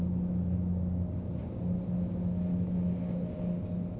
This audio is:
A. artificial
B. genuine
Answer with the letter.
B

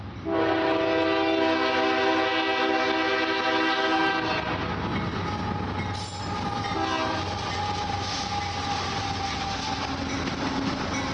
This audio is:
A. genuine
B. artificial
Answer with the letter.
A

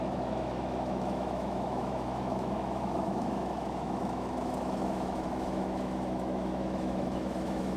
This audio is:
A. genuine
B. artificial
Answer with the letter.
B